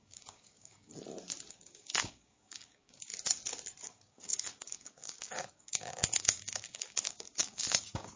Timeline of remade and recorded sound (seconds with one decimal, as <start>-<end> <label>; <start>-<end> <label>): 0.0-0.9 remade; 0.9-1.5 recorded; 1.5-3.1 remade; 3.1-3.8 recorded; 3.8-8.2 remade